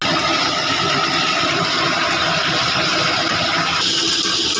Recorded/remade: recorded